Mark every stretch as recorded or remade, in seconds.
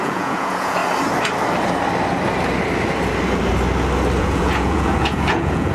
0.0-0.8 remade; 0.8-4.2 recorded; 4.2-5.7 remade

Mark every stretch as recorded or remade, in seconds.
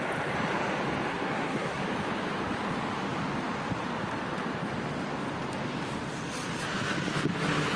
0.0-1.1 recorded; 1.1-1.8 remade; 1.8-7.8 recorded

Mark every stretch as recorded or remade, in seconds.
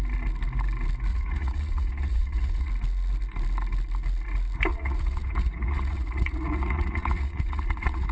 0.0-1.1 recorded; 1.1-2.7 remade; 2.7-4.7 recorded; 4.7-8.1 remade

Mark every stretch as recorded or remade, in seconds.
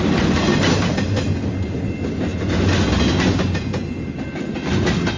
0.0-5.2 recorded